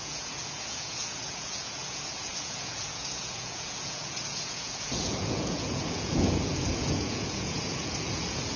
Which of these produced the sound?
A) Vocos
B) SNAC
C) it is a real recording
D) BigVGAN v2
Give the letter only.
A